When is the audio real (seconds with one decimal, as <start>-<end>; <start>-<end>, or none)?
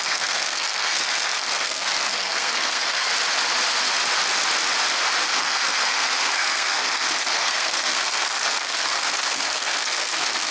3.1-5.4